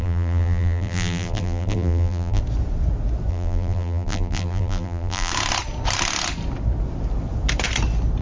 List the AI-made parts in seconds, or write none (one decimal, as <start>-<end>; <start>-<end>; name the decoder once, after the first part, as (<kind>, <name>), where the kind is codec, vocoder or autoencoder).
0.0-2.4 (vocoder, BigVGAN v2); 3.3-5.3